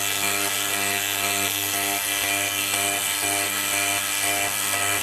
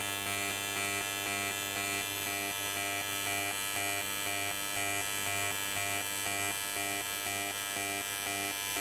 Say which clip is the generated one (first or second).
first